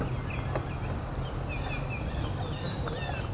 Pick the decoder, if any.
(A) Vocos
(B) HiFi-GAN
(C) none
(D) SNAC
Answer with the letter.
C